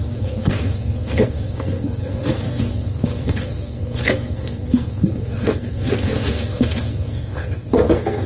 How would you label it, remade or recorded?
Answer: remade